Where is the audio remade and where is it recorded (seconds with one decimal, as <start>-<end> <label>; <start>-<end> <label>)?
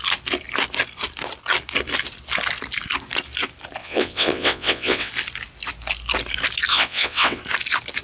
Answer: 0.0-3.8 recorded; 3.8-5.1 remade; 5.1-6.7 recorded; 6.7-7.4 remade; 7.4-8.0 recorded